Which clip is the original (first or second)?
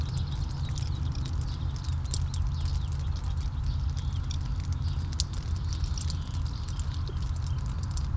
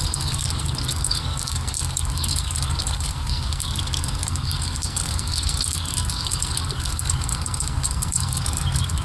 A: first